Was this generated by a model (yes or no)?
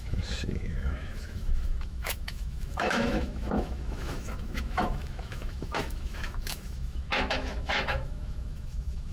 yes